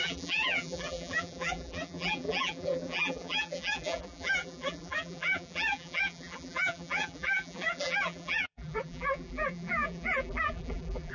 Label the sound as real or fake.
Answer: fake